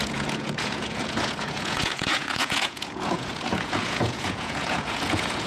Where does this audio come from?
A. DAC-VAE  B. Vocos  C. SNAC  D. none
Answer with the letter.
B